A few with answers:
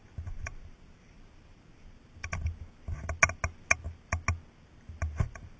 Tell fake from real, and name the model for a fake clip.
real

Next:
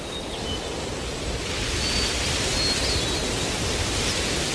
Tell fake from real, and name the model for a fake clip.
real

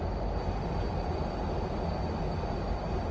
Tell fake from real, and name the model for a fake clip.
real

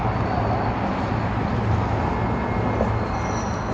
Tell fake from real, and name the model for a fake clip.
real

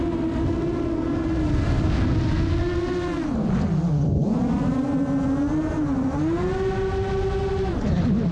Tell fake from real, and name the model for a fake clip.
real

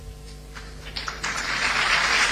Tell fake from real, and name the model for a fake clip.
fake, vocoder, BigVGAN v2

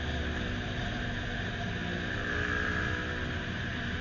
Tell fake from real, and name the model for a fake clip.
real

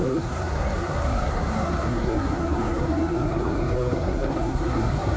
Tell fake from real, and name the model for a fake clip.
fake, codec, SNAC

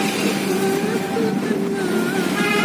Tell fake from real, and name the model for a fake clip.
real